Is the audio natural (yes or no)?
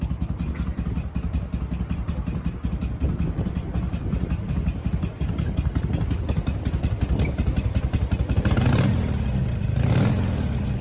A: yes